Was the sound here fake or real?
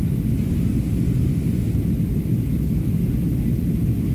real